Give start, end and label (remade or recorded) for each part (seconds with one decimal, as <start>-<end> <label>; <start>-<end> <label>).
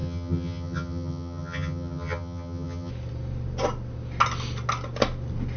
0.0-2.9 remade; 2.9-5.6 recorded